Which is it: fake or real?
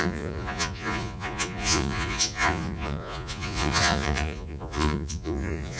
fake